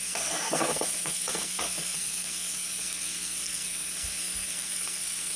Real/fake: fake